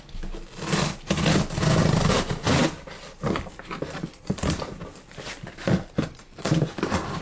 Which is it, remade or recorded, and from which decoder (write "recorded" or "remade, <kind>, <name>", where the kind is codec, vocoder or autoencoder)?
recorded